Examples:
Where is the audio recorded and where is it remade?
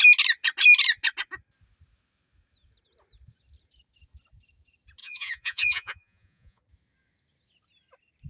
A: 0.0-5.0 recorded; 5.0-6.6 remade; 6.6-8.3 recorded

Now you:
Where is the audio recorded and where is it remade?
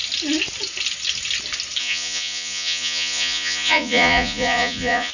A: 0.0-1.8 recorded; 1.8-5.1 remade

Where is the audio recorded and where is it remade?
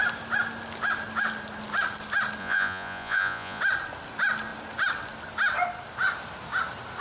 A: 0.0-2.4 recorded; 2.4-3.6 remade; 3.6-7.0 recorded